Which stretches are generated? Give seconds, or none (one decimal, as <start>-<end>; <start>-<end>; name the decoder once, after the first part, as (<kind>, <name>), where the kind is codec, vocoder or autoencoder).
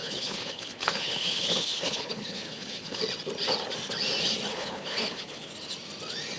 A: 0.0-3.0 (codec, HILCodec); 4.5-5.5